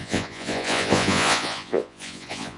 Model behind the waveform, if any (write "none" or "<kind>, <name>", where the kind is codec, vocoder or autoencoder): vocoder, Vocos